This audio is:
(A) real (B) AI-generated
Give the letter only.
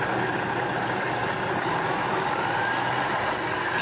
A